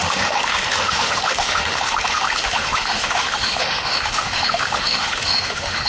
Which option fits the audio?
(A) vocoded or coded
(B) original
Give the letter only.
A